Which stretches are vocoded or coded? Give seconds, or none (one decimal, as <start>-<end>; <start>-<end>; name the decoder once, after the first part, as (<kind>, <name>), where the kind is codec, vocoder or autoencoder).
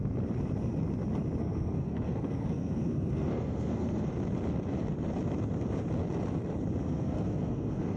1.4-4.1 (codec, SNAC); 6.8-8.0